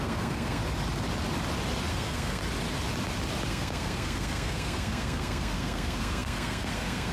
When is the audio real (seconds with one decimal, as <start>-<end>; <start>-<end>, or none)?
0.6-1.9; 2.4-3.5